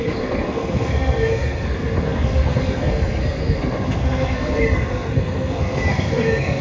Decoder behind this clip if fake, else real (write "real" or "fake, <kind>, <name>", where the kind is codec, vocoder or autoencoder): fake, codec, SNAC